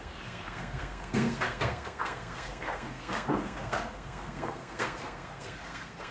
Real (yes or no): no